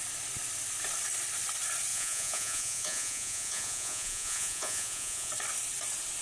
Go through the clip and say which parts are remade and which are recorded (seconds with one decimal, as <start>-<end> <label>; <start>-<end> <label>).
0.0-1.9 recorded; 1.9-5.3 remade; 5.3-6.2 recorded